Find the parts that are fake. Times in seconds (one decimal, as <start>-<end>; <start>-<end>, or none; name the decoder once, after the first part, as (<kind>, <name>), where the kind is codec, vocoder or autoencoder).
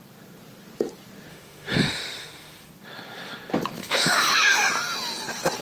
1.3-2.7 (autoencoder, DAC-VAE); 3.8-4.7